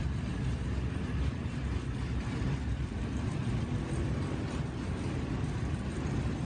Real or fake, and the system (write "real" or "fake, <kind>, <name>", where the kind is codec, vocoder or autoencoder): fake, vocoder, BigVGAN v2